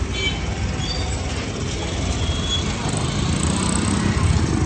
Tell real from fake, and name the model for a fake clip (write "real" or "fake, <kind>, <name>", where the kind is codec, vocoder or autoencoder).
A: real